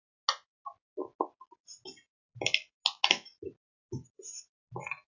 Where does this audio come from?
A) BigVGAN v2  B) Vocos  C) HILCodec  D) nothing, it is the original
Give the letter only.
D